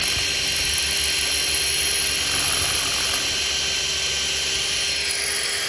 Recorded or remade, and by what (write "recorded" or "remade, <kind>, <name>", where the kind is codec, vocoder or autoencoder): recorded